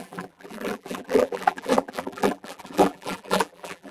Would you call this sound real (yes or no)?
no